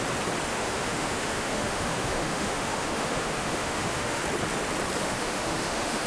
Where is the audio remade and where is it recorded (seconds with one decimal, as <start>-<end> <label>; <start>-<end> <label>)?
0.0-0.5 recorded; 0.5-4.2 remade; 4.2-5.0 recorded; 5.0-6.1 remade